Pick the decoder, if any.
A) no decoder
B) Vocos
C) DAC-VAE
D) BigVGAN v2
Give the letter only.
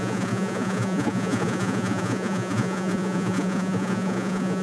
B